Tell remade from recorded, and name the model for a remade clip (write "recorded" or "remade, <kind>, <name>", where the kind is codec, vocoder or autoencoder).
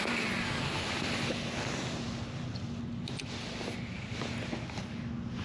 recorded